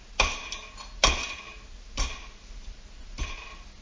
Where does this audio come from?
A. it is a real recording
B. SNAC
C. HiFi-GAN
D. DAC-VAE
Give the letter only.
A